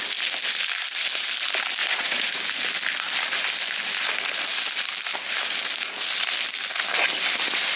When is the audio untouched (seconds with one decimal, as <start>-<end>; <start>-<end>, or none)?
0.0-1.8; 2.4-7.8